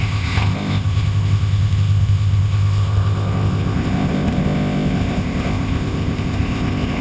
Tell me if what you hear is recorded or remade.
remade